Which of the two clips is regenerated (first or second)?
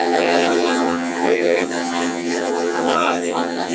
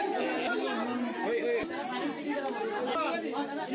first